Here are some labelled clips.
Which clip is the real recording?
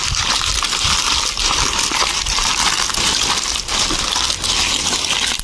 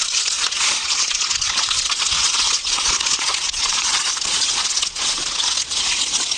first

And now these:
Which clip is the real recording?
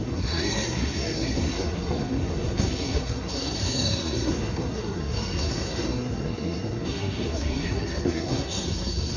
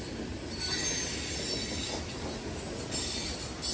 second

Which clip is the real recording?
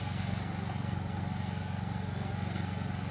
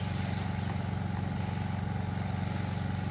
second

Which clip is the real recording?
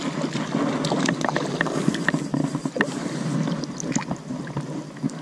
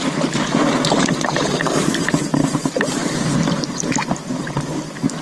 first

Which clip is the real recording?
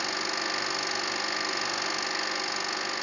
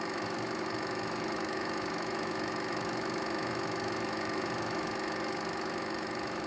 first